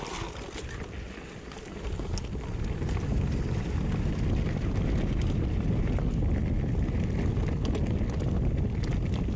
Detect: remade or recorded recorded